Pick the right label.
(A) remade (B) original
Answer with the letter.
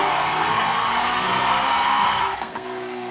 A